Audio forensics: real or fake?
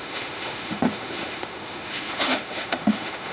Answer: fake